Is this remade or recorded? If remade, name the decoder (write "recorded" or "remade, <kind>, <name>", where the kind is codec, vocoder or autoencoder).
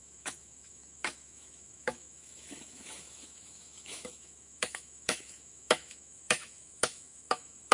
remade, autoencoder, DAC-VAE